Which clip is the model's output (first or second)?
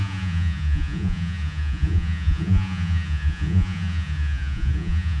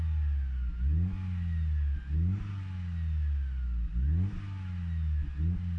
first